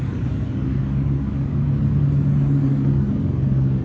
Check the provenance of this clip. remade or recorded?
remade